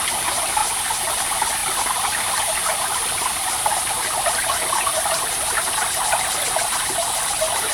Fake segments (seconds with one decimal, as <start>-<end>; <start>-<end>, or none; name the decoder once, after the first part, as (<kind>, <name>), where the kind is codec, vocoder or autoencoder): 0.0-0.6 (vocoder, BigVGAN v2); 1.1-1.6; 6.2-7.7